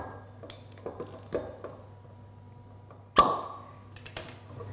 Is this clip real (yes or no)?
yes